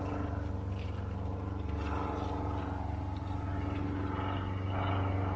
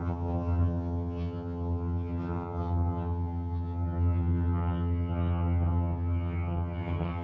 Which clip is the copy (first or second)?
second